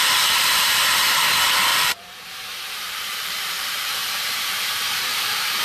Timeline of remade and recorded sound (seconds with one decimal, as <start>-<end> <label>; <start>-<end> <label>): 0.0-1.7 remade; 1.7-2.3 recorded; 2.3-5.6 remade